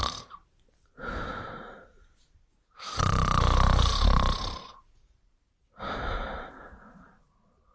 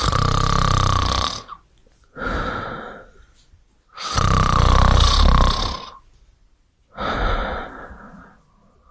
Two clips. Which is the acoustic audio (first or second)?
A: second